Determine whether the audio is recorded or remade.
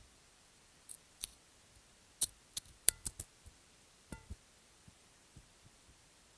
remade